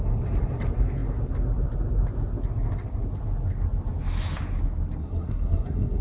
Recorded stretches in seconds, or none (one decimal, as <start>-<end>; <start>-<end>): 0.0-5.0

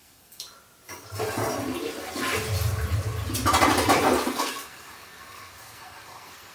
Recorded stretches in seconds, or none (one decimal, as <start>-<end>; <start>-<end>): 0.4-4.3

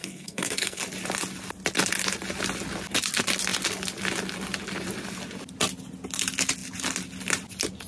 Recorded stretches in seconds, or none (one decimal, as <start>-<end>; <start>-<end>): 0.8-7.9